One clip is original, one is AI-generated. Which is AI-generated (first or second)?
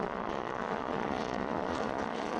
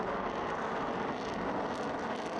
first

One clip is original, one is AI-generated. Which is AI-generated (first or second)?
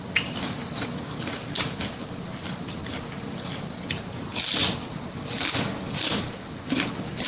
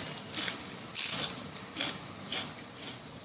second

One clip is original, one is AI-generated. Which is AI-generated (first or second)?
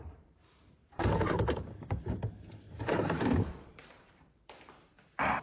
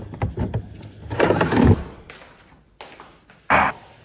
first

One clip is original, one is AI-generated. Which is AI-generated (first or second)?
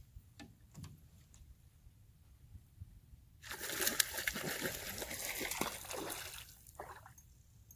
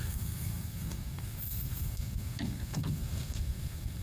second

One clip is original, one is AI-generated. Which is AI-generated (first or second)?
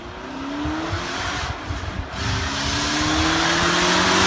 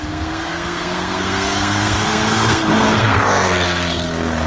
second